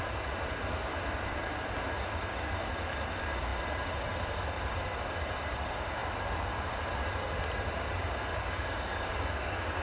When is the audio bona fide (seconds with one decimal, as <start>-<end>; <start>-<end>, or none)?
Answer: 0.0-8.3